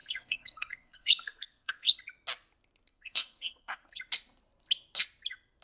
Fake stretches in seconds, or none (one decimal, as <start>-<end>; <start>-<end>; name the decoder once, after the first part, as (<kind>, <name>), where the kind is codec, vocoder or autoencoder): 0.0-2.0 (codec, SNAC); 2.9-4.0